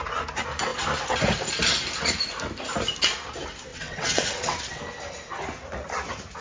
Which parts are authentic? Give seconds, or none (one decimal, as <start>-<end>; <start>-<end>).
0.0-3.7; 4.8-6.4